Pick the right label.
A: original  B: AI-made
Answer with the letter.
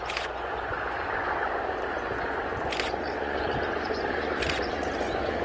B